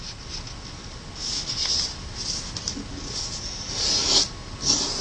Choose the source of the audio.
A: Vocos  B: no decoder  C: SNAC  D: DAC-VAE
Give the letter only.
B